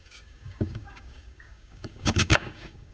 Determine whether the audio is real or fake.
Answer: fake